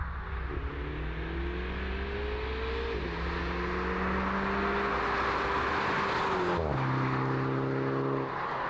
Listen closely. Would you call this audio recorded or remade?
recorded